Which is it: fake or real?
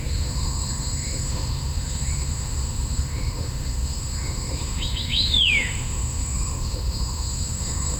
fake